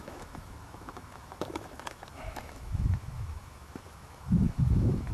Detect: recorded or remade remade